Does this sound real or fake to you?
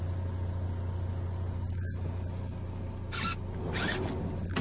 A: real